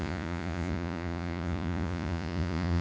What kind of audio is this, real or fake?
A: fake